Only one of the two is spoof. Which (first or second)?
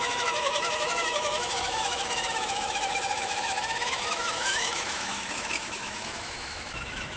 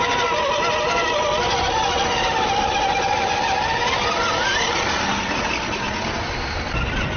first